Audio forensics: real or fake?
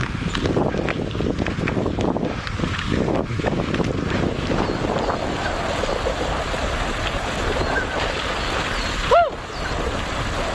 real